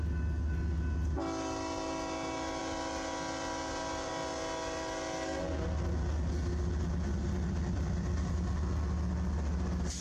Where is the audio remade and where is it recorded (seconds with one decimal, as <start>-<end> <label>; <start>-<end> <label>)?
0.0-7.2 recorded; 7.2-8.5 remade; 8.5-10.0 recorded